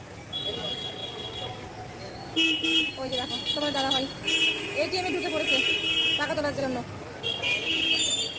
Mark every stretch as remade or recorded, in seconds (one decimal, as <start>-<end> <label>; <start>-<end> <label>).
0.0-8.4 recorded

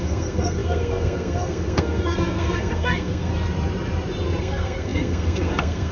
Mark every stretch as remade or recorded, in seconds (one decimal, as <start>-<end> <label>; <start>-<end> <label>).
0.0-3.3 remade; 3.3-4.4 recorded; 4.4-5.9 remade

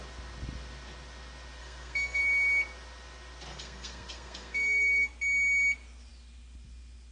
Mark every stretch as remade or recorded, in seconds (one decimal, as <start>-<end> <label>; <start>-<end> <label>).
0.0-1.6 recorded; 1.6-2.2 remade; 2.2-3.5 recorded; 3.5-5.1 remade; 5.1-7.1 recorded

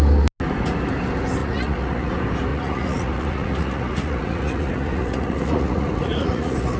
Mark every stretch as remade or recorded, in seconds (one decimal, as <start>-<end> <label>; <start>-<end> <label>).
0.0-1.4 recorded; 1.4-2.1 remade; 2.1-2.5 recorded; 2.5-6.8 remade

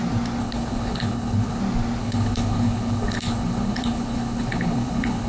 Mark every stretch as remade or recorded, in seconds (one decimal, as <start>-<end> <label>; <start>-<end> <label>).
0.0-0.4 recorded; 0.4-1.6 remade; 1.6-2.0 recorded; 2.0-5.3 remade

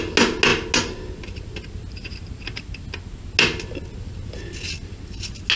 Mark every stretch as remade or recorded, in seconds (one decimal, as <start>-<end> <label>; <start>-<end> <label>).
0.0-5.6 recorded

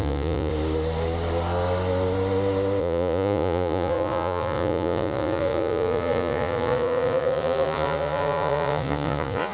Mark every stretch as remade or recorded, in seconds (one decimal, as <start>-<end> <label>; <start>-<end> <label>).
0.0-0.5 remade; 0.5-2.8 recorded; 2.8-9.5 remade